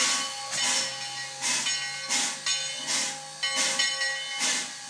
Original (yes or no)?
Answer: yes